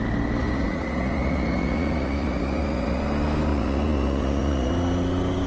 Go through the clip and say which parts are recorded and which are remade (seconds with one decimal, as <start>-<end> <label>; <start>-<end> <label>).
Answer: 0.0-0.4 recorded; 0.4-3.0 remade; 3.0-3.5 recorded; 3.5-4.7 remade; 4.7-5.5 recorded